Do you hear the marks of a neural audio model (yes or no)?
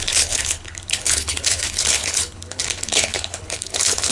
yes